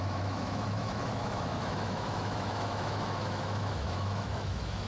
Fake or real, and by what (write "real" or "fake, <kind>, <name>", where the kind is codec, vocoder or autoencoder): fake, autoencoder, DAC-VAE